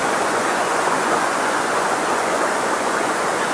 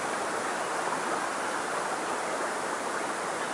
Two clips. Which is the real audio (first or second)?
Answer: second